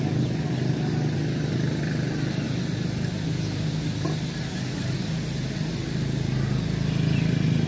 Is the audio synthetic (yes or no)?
no